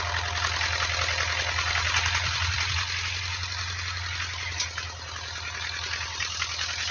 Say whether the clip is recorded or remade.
recorded